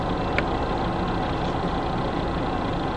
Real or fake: real